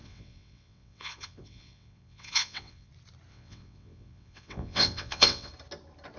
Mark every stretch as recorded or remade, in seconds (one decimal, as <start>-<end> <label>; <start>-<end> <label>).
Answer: 0.0-2.9 remade; 2.9-3.3 recorded; 3.3-5.5 remade; 5.5-6.2 recorded